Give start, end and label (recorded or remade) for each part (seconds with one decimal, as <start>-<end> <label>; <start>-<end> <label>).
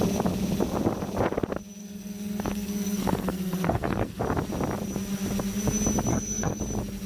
0.0-1.8 recorded; 1.8-4.2 remade; 4.2-6.1 recorded; 6.1-6.6 remade; 6.6-7.1 recorded